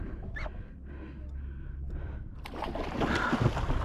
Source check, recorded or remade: recorded